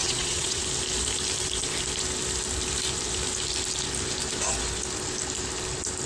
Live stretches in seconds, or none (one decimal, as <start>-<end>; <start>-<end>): 0.6-6.1